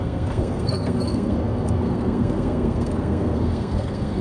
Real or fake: fake